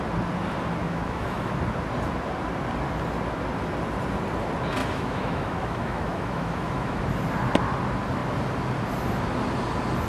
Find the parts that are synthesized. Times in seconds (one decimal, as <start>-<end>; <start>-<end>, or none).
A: 0.8-1.5; 4.8-7.0